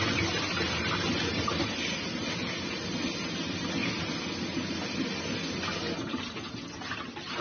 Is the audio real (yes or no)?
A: yes